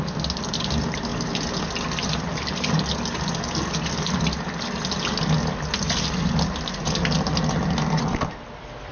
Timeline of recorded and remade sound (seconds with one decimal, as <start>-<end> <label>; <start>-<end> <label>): 0.0-8.9 recorded